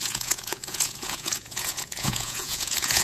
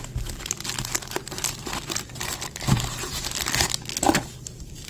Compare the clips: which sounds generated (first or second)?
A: first